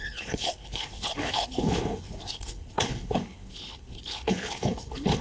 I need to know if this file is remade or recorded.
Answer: remade